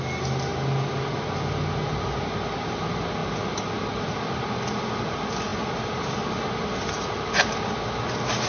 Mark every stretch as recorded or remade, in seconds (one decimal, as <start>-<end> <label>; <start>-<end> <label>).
0.0-8.5 recorded